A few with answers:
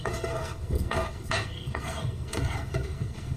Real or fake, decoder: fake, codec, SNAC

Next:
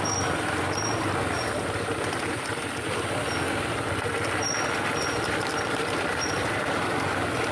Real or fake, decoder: real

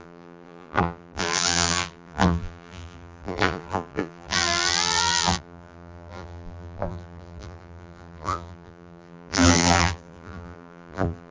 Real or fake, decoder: fake, vocoder, BigVGAN v2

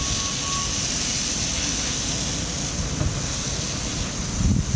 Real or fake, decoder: real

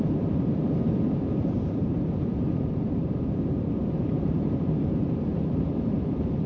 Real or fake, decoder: fake, vocoder, BigVGAN v2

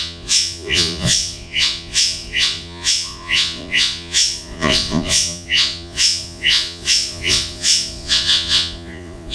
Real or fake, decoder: fake, vocoder, Vocos